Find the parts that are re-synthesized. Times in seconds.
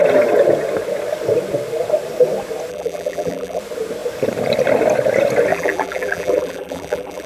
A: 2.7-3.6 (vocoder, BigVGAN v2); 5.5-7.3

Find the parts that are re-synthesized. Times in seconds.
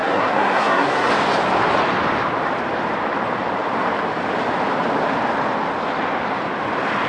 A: 0.0-1.1 (codec, SNAC)